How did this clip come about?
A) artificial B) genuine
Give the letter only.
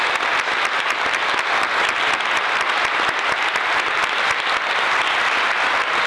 B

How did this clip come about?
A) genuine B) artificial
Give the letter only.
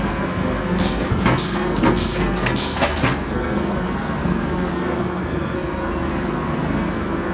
B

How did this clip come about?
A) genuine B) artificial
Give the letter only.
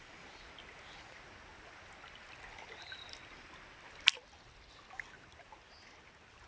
A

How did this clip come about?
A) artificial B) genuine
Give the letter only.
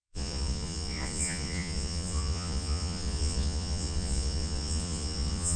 A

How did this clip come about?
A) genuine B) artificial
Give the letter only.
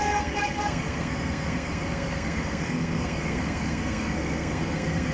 B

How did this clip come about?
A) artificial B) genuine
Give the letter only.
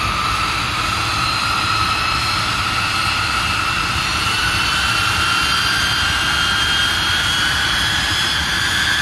A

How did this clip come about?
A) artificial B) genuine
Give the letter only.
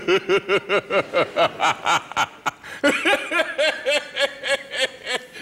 B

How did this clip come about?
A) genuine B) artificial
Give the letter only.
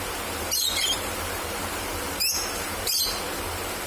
B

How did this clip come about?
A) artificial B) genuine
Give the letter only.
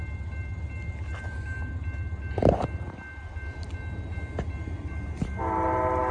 B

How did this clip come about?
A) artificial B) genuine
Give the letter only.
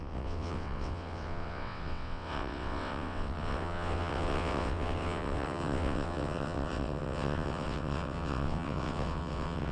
A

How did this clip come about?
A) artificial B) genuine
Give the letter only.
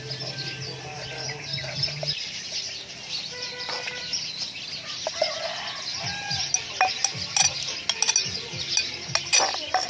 B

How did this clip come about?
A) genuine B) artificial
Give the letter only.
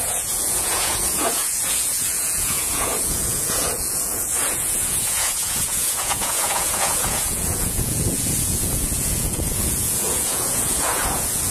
B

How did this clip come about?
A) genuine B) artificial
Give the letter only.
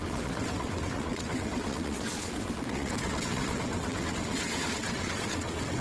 B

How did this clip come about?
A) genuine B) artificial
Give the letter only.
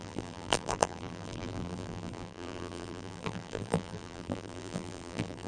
B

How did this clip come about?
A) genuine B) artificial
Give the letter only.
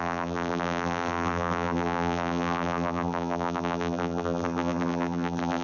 B